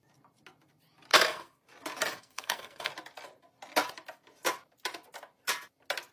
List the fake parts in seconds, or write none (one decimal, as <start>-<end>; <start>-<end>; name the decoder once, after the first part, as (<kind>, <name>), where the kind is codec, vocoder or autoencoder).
1.1-1.6 (codec, SNAC); 2.1-2.9